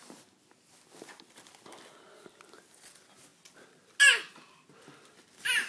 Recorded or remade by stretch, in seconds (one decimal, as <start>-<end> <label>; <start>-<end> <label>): 0.0-5.7 recorded